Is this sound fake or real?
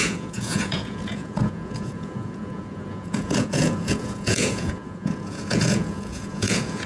fake